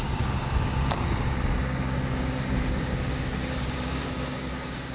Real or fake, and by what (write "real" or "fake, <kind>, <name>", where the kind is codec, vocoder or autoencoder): fake, codec, DAC